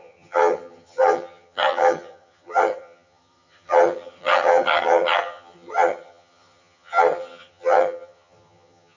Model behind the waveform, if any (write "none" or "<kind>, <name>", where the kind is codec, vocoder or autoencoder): vocoder, HiFi-GAN